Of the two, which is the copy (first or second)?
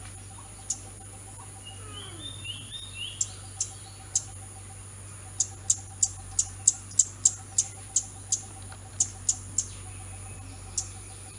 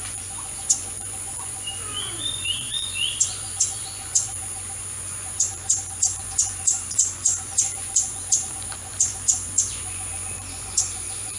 second